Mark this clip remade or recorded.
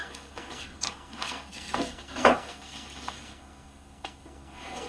remade